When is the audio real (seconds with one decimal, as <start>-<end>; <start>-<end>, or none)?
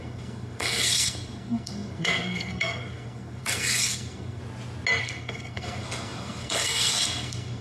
4.4-5.0